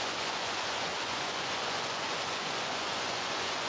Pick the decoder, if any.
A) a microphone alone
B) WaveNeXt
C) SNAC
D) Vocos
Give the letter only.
D